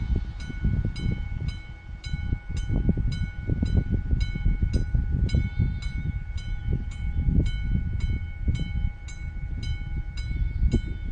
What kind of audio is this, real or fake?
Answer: real